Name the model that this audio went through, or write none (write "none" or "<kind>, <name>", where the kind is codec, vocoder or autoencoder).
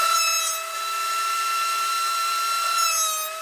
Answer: none